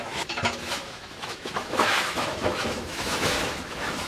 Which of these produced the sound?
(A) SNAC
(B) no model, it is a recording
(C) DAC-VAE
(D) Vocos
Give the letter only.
C